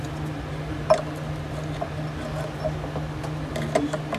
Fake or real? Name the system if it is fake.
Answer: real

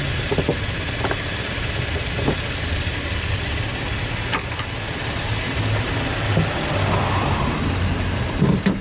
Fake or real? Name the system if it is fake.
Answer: real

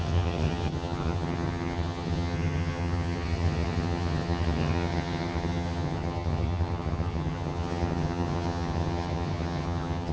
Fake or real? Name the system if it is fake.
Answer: fake, vocoder, HiFi-GAN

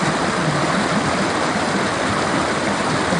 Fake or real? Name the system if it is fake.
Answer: real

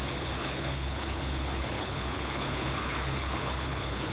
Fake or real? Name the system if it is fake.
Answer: fake, codec, HILCodec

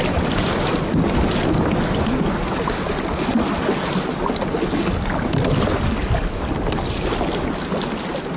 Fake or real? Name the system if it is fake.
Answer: real